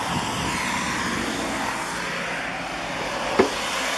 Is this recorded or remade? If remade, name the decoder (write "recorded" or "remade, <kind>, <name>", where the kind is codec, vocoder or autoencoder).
recorded